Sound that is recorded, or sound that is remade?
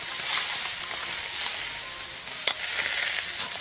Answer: recorded